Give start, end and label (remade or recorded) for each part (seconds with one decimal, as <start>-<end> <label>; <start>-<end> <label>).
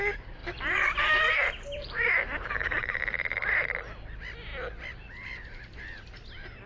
0.0-0.4 recorded; 0.4-3.0 remade; 3.0-6.7 recorded